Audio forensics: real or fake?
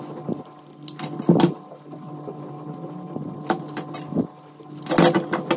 real